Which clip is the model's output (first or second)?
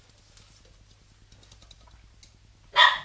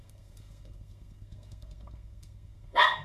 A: second